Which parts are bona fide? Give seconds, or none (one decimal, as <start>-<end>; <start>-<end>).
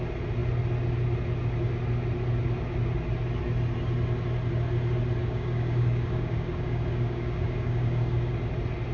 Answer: 0.0-5.2; 8.3-8.9